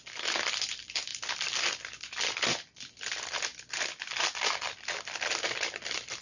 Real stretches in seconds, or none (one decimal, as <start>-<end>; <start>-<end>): 0.0-6.2